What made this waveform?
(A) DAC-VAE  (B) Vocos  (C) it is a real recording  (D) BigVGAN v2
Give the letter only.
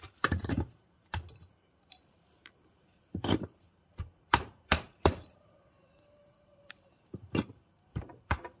D